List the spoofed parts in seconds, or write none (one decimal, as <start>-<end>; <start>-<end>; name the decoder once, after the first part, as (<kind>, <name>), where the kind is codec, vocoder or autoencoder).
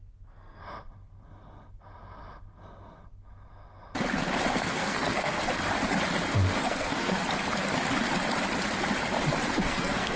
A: 0.0-0.6 (codec, SNAC); 4.5-5.4; 6.3-7.2; 9.5-10.2